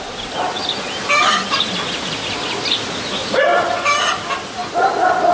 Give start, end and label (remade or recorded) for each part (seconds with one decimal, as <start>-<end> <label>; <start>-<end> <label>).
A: 0.0-5.3 recorded